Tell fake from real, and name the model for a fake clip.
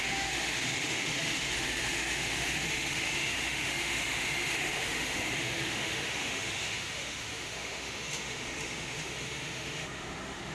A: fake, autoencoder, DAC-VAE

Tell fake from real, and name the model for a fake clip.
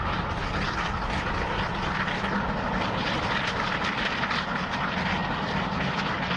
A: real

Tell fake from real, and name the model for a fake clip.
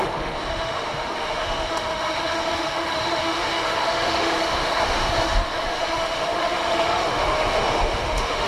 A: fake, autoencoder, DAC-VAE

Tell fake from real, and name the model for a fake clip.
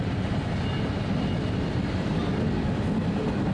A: real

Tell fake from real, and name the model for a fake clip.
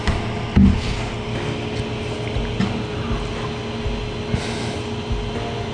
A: real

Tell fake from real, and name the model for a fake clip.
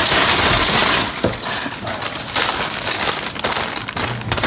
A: real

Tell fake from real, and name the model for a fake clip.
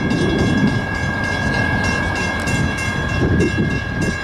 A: real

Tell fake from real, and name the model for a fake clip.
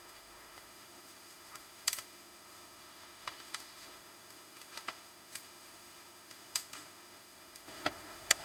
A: fake, autoencoder, DAC-VAE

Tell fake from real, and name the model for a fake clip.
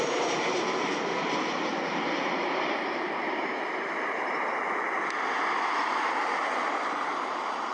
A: real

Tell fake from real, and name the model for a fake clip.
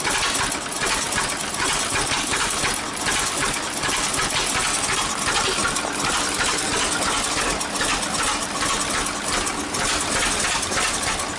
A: real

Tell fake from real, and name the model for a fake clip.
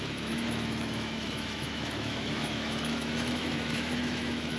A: fake, autoencoder, DAC-VAE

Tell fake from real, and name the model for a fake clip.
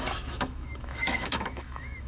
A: fake, autoencoder, DAC-VAE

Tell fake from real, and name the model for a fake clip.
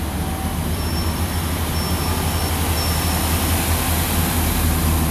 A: real